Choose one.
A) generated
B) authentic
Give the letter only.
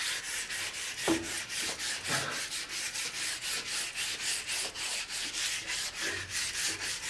B